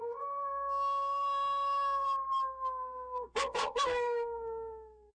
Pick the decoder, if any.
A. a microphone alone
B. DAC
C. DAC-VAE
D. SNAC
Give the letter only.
D